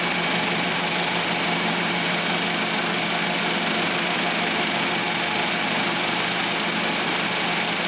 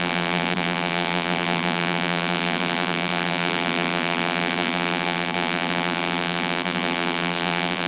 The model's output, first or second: second